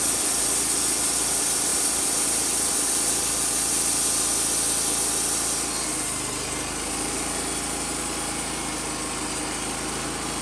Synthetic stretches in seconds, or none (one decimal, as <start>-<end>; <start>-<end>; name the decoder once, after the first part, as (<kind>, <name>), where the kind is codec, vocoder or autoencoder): none